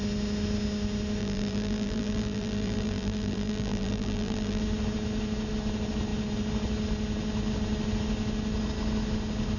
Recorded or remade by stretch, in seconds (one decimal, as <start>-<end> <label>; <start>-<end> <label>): 0.0-1.2 recorded; 1.2-4.6 remade; 4.6-9.6 recorded